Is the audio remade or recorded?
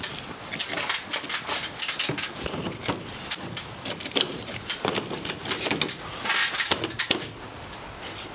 recorded